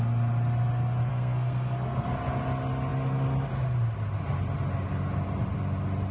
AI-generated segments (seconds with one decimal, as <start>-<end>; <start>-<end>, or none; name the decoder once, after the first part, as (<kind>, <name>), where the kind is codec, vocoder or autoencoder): 1.1-2.1 (codec, SNAC)